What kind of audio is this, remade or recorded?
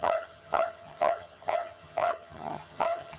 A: remade